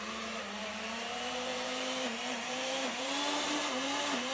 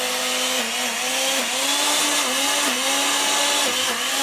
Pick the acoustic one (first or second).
second